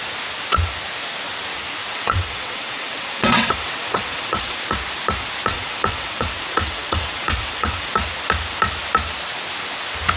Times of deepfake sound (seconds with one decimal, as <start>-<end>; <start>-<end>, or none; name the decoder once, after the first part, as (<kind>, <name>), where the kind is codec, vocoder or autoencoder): 1.8-4.6 (vocoder, WaveNeXt); 5.5-7.9